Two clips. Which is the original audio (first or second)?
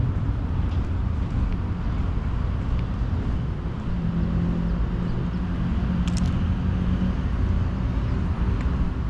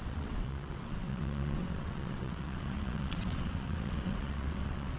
first